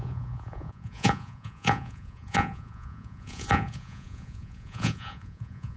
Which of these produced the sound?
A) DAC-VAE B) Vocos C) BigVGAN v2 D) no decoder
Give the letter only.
B